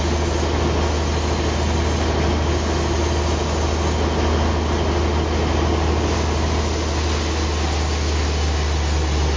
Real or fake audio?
real